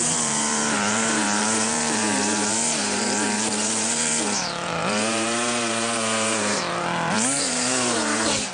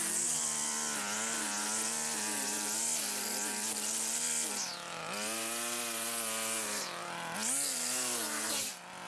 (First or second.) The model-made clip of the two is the first